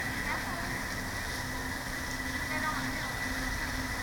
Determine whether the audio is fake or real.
real